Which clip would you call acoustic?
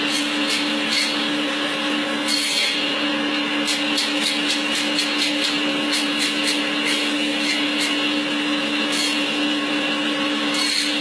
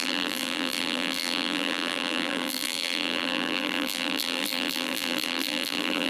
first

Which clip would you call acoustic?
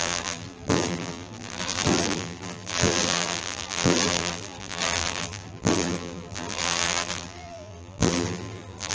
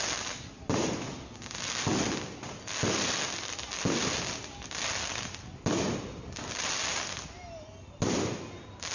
second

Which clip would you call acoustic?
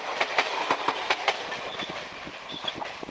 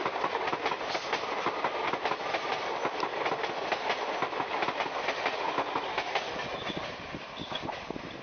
second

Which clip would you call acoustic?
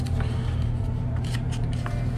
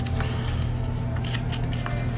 second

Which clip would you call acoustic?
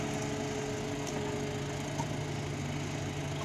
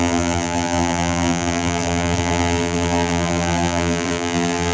first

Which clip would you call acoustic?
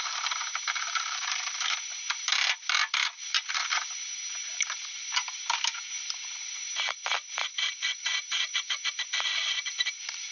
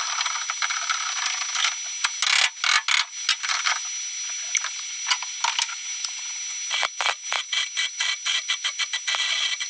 second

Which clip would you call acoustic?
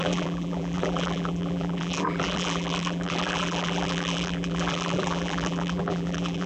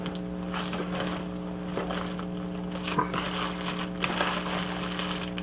second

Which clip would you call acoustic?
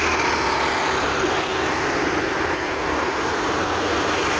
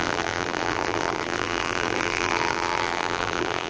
first